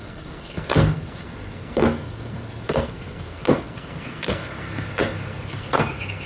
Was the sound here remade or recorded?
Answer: remade